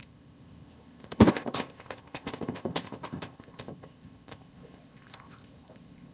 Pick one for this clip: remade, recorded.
remade